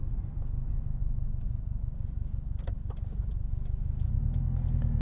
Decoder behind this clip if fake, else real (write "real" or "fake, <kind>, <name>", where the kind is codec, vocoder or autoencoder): real